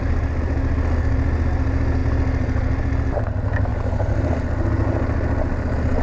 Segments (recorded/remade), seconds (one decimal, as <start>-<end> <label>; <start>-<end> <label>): 0.0-6.0 recorded